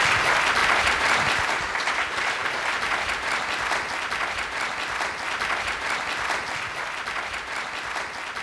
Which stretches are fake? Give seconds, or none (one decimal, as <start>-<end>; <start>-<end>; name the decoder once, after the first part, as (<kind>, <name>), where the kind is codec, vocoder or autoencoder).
0.6-1.6 (vocoder, BigVGAN v2)